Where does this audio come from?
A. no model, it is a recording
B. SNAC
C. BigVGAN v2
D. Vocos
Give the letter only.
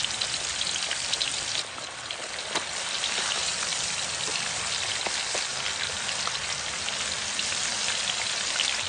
A